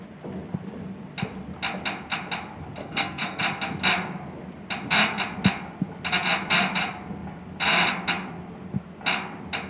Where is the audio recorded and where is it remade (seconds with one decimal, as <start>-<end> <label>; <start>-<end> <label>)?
0.0-2.8 recorded; 2.8-3.4 remade; 3.4-9.7 recorded